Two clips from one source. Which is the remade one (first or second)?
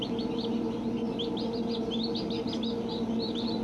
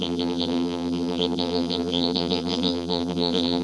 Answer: second